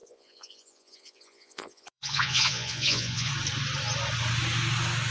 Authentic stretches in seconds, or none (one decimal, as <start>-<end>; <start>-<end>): 3.3-5.1